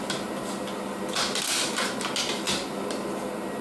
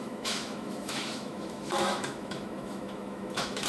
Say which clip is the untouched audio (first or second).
first